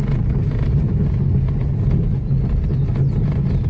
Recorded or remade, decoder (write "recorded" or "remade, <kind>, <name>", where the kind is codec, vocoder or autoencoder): recorded